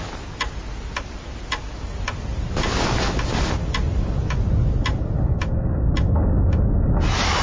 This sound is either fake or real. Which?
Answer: real